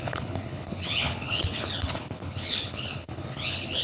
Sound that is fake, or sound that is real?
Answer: fake